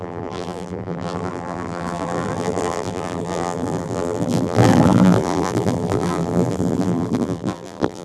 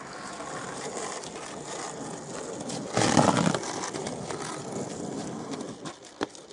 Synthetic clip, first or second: first